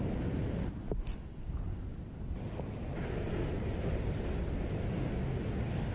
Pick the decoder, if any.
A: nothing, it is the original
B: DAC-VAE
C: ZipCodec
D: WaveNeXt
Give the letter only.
A